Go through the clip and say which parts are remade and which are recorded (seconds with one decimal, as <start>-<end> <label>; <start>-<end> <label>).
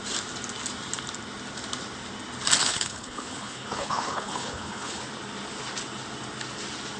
0.0-2.6 recorded; 2.6-5.0 remade; 5.0-7.0 recorded